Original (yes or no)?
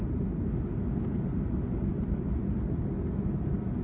yes